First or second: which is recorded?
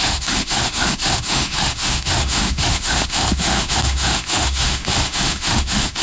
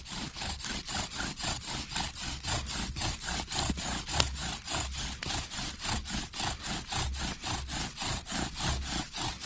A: second